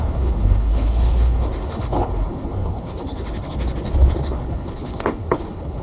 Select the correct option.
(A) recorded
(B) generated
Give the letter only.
B